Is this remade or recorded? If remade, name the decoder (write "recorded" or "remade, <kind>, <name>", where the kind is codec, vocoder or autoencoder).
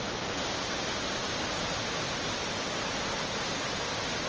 recorded